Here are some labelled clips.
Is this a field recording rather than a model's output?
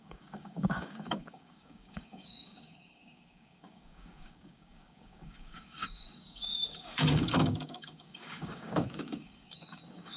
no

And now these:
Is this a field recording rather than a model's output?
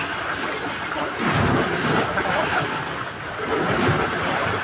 yes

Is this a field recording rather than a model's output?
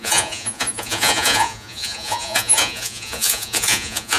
no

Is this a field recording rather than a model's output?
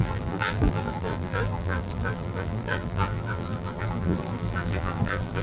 no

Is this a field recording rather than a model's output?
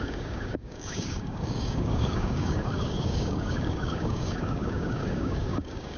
no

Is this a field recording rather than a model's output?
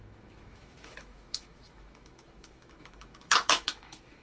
no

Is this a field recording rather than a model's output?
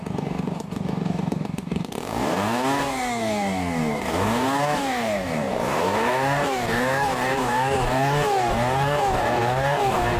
no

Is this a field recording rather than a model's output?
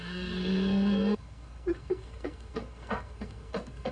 no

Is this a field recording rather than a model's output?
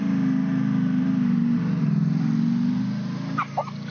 yes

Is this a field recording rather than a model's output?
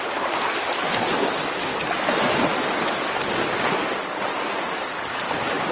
yes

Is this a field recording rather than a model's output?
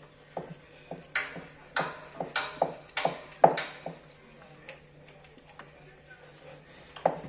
yes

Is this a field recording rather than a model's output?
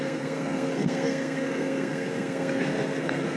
no